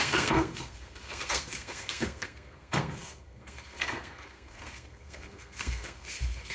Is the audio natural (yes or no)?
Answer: no